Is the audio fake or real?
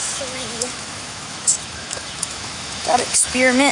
fake